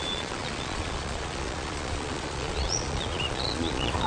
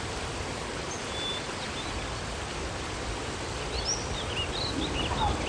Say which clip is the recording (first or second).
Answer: second